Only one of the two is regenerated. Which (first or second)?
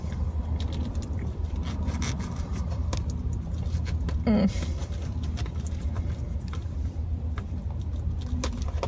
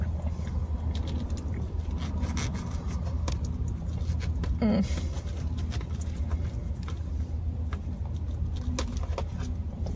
first